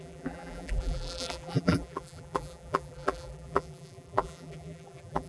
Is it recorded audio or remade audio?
remade